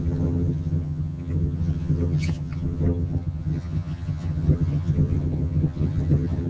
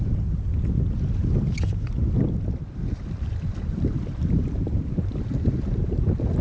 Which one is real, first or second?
second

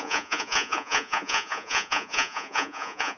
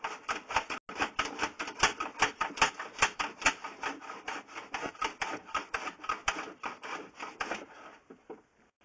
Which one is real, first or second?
second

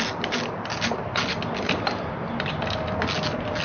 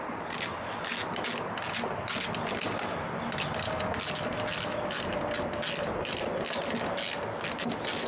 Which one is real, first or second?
second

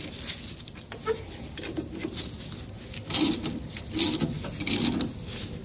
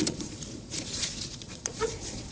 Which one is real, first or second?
first